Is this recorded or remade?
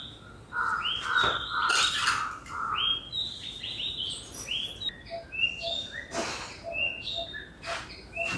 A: recorded